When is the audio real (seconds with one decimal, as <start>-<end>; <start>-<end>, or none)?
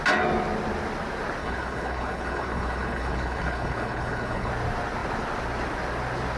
0.0-1.4; 4.5-6.4